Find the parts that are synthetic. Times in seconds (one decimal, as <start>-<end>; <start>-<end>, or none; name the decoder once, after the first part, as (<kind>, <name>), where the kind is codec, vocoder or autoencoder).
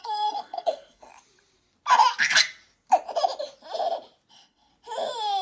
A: 0.0-1.1 (codec, SNAC); 4.3-4.7